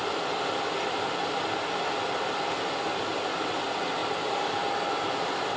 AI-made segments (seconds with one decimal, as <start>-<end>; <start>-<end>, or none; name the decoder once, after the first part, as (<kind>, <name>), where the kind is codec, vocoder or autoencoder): none